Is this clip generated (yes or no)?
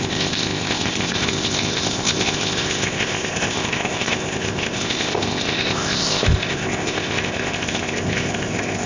yes